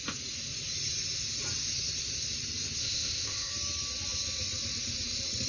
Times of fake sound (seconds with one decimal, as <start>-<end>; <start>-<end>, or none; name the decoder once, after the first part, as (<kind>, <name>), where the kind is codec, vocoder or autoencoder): 2.8-3.5 (codec, ZipCodec)